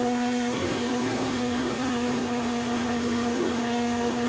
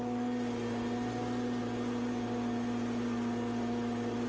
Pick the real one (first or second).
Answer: second